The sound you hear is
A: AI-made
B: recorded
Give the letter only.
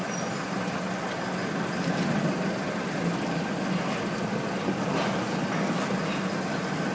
B